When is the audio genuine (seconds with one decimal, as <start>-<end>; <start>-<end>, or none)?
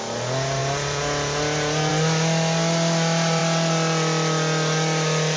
0.0-5.4